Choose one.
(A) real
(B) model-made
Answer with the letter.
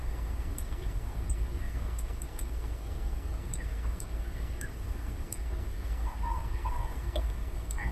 B